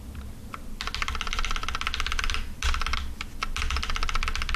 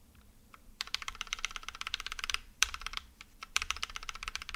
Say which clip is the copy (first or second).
second